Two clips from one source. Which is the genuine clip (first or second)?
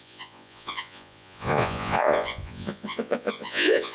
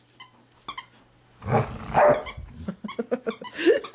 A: second